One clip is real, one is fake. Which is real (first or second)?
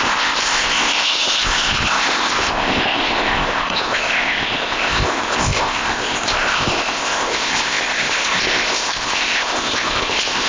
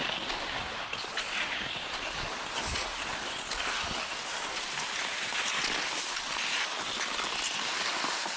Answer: second